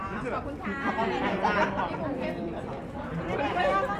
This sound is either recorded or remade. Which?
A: recorded